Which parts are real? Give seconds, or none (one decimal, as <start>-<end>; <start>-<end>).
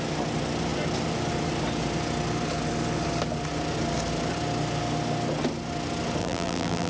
0.0-6.2